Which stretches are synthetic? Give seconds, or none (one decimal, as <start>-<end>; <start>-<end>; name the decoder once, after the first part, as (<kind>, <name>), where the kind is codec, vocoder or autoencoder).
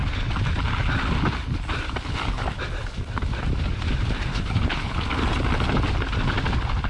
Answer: 4.3-5.0 (codec, HILCodec)